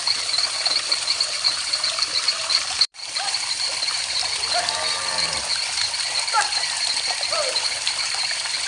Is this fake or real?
fake